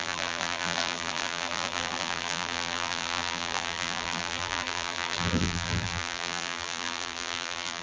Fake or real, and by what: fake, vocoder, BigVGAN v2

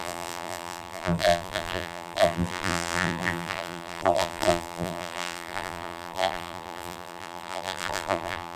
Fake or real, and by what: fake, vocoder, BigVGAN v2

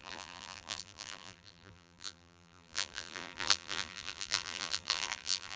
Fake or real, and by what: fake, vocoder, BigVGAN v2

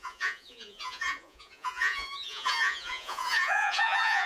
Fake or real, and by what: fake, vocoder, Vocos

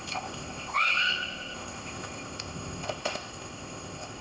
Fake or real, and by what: fake, codec, ZipCodec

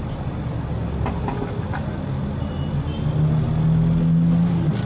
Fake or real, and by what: real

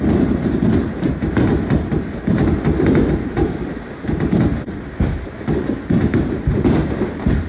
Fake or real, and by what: real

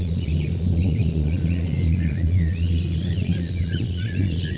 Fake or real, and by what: fake, vocoder, Vocos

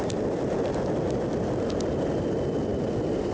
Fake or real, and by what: real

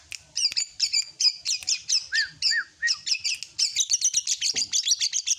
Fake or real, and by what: real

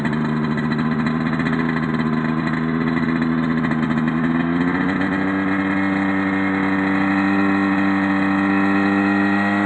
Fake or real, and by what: real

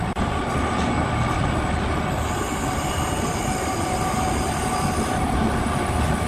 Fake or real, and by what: real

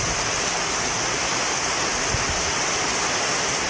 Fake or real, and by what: real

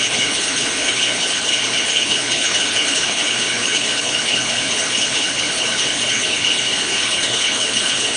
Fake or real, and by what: fake, codec, HILCodec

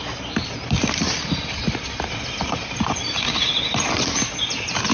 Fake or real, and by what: real